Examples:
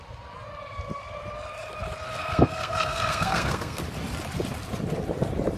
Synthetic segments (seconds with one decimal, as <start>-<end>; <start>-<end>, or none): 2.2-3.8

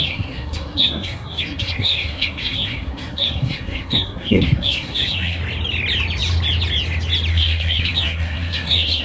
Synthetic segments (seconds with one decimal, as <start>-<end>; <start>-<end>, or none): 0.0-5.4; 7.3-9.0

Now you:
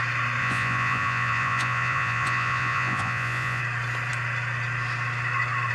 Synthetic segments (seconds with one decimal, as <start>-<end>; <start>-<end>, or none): 0.4-3.6

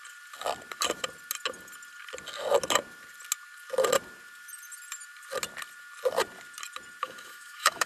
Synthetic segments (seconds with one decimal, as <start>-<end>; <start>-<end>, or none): 7.0-7.9

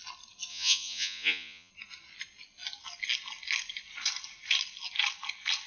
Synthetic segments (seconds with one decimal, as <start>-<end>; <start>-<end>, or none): 0.5-1.7

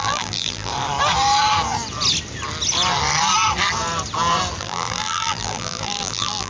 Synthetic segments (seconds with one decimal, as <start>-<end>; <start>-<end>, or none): 0.0-0.7; 4.6-6.5